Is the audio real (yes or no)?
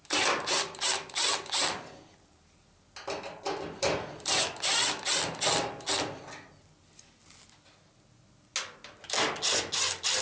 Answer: yes